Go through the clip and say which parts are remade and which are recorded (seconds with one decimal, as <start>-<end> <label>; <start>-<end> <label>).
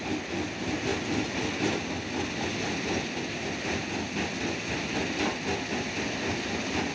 0.0-6.9 recorded